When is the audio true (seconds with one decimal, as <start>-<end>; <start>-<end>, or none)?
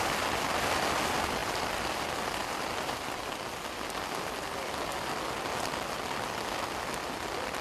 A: 0.0-7.6